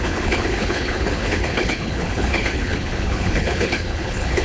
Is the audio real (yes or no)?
no